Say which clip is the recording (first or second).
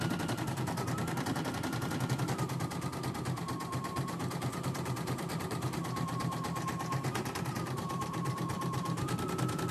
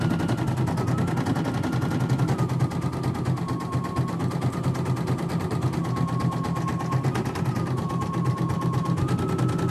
second